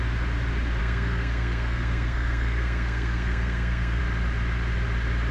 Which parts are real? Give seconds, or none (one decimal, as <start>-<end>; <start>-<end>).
0.0-0.8; 4.0-5.3